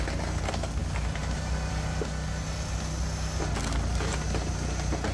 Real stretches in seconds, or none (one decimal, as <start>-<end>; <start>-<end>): 0.0-5.1